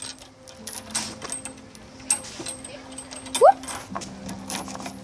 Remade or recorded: recorded